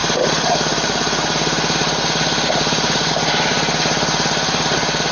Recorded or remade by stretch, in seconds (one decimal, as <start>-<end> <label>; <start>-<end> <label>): 0.0-5.1 recorded